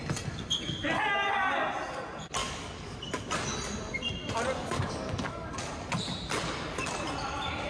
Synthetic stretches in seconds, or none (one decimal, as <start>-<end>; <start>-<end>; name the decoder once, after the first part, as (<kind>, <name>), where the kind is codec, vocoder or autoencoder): 2.4-3.3 (codec, DAC); 4.6-5.5